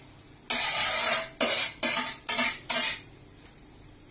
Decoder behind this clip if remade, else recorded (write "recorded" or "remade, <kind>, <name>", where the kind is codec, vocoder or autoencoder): recorded